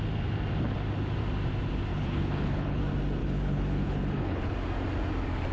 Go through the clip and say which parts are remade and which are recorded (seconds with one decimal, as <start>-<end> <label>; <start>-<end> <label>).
0.0-1.9 recorded; 1.9-2.8 remade; 2.8-3.2 recorded; 3.2-4.5 remade; 4.5-5.5 recorded